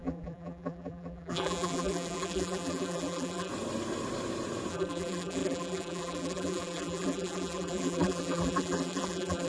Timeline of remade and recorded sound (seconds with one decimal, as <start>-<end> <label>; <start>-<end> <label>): 0.0-3.5 remade; 3.5-4.7 recorded; 4.7-9.5 remade